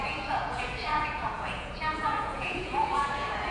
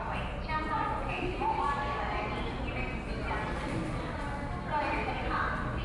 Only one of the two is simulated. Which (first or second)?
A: first